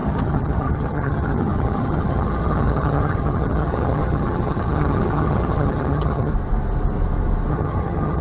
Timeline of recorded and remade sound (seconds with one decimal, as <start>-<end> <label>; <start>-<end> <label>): 0.0-6.3 remade; 6.3-7.5 recorded; 7.5-8.2 remade